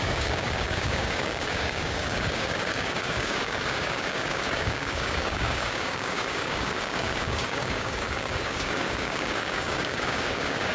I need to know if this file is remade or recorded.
remade